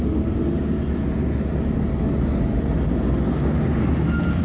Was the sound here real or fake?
real